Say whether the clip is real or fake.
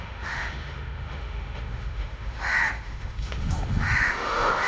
fake